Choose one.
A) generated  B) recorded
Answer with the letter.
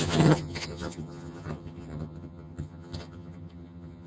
A